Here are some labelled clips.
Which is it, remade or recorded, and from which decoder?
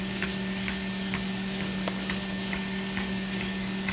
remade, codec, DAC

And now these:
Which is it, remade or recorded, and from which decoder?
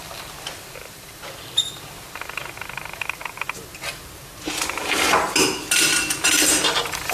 recorded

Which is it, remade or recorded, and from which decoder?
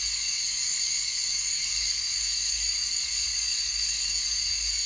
remade, codec, DAC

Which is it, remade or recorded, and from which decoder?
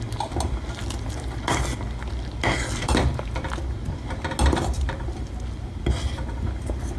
recorded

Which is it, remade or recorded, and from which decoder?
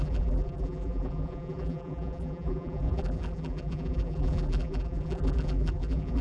remade, vocoder, BigVGAN v2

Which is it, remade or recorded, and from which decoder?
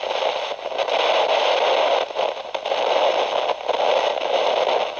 recorded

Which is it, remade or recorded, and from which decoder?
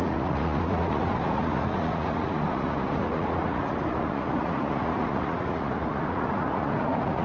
remade, vocoder, Vocos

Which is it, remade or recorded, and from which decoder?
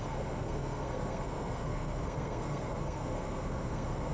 remade, codec, SNAC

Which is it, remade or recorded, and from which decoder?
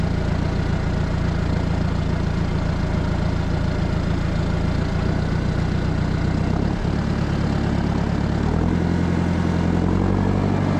recorded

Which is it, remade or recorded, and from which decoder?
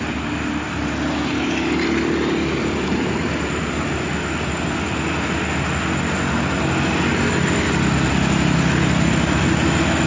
recorded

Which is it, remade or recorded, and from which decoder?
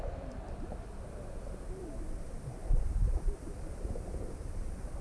remade, vocoder, BigVGAN v2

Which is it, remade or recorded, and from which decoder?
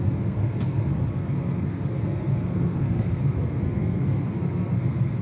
remade, codec, SNAC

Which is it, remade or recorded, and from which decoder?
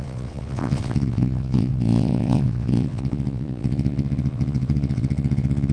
remade, vocoder, WaveNeXt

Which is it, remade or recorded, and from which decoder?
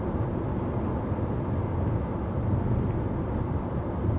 recorded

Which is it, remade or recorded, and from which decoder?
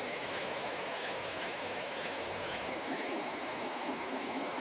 remade, autoencoder, DAC-VAE